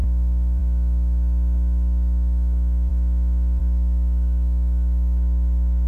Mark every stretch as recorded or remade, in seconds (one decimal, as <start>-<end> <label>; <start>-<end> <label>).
0.0-2.9 remade; 2.9-3.6 recorded; 3.6-5.9 remade